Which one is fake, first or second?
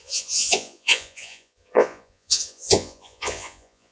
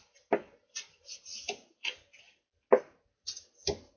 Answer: first